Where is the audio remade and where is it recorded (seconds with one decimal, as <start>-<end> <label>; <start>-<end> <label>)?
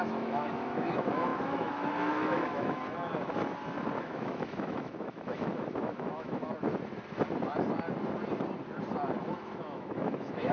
0.0-2.8 remade; 2.8-4.0 recorded; 4.0-6.5 remade; 6.5-9.2 recorded; 9.2-10.5 remade